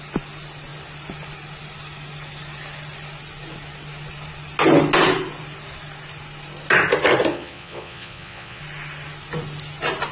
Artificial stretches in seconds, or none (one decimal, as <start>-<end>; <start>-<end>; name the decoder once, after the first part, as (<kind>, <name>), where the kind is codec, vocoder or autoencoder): 7.3-8.6 (vocoder, Vocos)